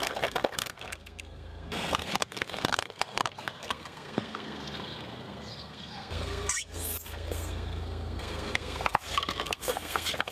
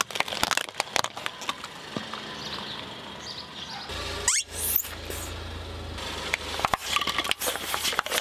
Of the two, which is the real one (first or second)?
second